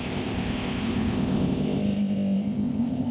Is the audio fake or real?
fake